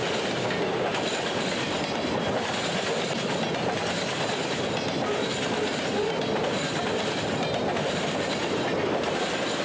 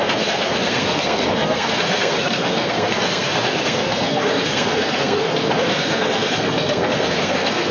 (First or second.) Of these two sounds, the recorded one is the first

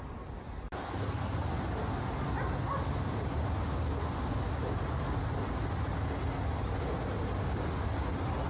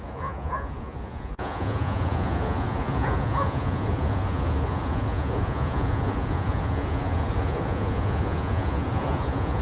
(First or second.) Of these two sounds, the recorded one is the first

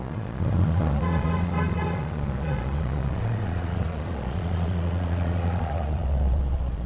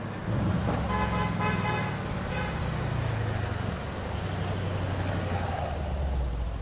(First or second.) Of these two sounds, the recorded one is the second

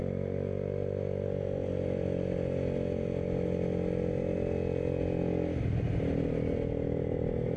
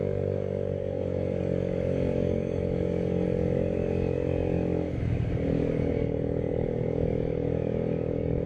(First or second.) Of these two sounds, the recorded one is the first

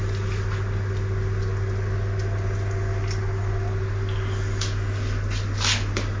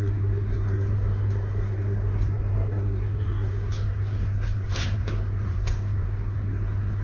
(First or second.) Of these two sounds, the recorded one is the first